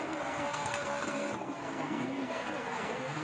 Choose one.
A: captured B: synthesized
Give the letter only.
B